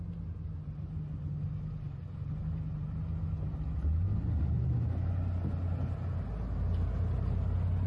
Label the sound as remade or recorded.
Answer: recorded